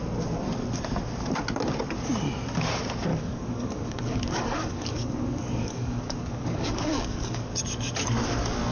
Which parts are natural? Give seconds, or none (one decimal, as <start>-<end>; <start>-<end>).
0.0-3.1; 7.6-8.7